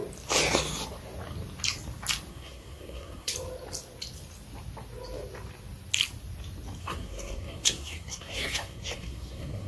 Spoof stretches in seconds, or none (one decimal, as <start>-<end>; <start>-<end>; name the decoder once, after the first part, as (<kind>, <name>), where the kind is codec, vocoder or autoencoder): 2.3-3.3 (codec, SNAC); 6.8-9.7